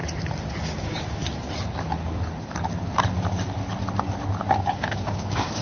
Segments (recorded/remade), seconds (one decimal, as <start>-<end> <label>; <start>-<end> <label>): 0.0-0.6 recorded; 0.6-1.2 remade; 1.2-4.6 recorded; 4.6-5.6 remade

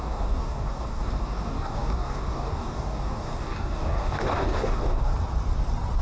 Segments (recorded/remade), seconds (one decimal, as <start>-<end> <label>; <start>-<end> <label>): 0.0-5.1 remade; 5.1-6.0 recorded

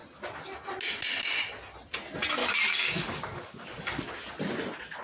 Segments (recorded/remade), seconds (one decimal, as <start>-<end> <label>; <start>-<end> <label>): 0.0-2.4 recorded; 2.4-4.1 remade; 4.1-5.0 recorded

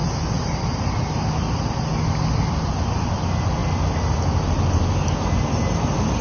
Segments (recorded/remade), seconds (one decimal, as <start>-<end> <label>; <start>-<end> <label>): 0.0-6.2 recorded

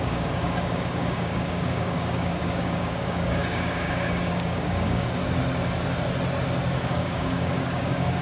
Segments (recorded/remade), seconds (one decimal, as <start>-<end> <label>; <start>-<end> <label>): 0.0-5.2 remade; 5.2-6.9 recorded; 6.9-8.2 remade